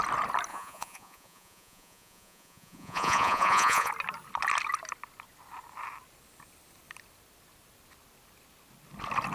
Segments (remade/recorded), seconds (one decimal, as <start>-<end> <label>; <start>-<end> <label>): 0.0-0.5 recorded; 0.5-3.9 remade; 3.9-9.3 recorded